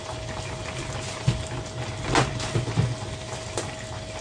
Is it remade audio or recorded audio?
recorded